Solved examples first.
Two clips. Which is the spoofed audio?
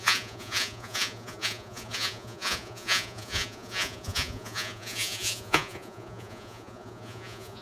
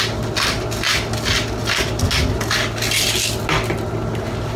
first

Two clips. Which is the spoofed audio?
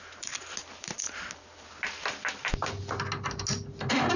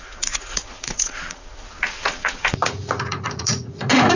second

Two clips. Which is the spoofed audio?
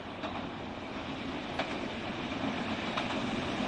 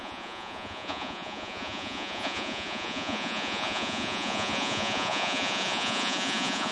second